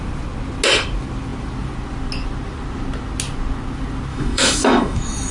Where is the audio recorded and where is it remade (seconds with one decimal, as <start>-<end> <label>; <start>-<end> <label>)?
0.0-4.1 recorded; 4.1-5.3 remade

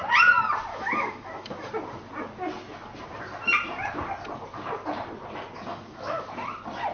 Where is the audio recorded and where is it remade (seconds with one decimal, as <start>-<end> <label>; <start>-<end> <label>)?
0.0-0.7 recorded; 0.7-1.7 remade; 1.7-5.7 recorded; 5.7-6.3 remade; 6.3-6.9 recorded

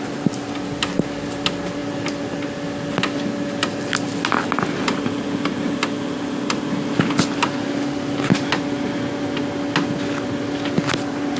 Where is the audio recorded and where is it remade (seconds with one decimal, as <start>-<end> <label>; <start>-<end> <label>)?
0.0-11.4 recorded

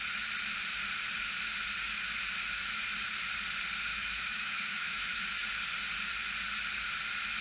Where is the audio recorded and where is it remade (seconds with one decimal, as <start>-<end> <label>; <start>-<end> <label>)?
0.0-3.9 recorded; 3.9-5.2 remade; 5.2-7.4 recorded

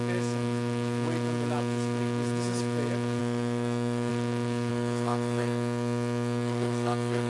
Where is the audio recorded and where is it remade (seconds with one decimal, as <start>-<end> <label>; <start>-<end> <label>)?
0.0-3.2 recorded; 3.2-4.1 remade; 4.1-4.7 recorded; 4.7-7.3 remade

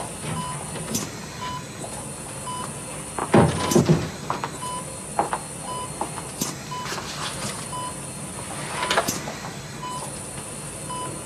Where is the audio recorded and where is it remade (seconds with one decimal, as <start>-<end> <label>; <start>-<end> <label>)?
0.0-11.3 recorded

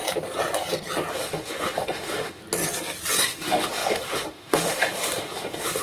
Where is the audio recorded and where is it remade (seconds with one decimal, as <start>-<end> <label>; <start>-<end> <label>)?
0.0-1.1 recorded; 1.1-2.4 remade; 2.4-3.2 recorded; 3.2-5.8 remade